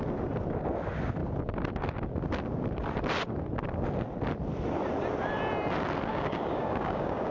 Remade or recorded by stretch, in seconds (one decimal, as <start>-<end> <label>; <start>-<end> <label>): 0.0-6.1 recorded; 6.1-7.3 remade